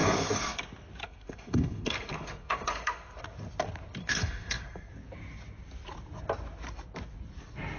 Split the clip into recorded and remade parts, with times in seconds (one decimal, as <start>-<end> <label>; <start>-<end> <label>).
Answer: 0.0-0.6 remade; 0.6-1.0 recorded; 1.0-3.2 remade; 3.2-4.0 recorded; 4.0-4.9 remade; 4.9-7.8 recorded